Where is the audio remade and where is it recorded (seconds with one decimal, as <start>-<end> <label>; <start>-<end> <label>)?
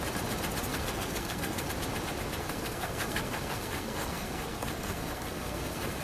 0.0-0.7 recorded; 0.7-1.7 remade; 1.7-2.4 recorded; 2.4-6.0 remade